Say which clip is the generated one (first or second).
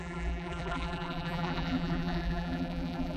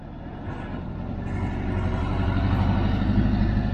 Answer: first